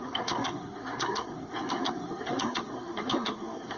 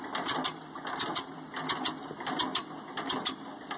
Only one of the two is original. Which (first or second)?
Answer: second